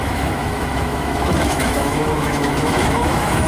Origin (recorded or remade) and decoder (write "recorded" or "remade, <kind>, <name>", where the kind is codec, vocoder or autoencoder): remade, autoencoder, DAC-VAE